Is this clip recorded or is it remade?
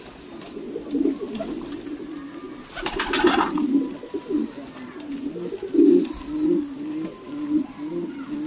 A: recorded